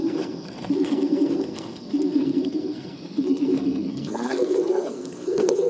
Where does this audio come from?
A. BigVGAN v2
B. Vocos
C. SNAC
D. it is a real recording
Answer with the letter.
C